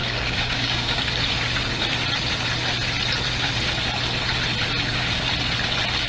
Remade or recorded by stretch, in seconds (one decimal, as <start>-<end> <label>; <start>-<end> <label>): 0.0-1.2 remade; 1.2-6.1 recorded